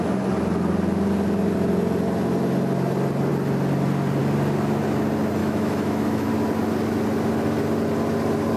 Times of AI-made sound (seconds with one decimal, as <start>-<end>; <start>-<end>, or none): 5.4-6.3